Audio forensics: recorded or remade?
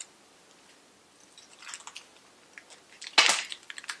recorded